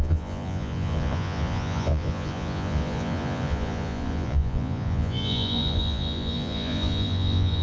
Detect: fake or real fake